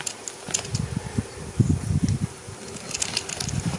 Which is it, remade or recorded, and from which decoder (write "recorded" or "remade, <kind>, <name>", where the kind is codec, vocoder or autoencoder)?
recorded